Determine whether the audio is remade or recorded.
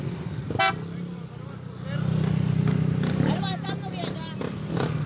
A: recorded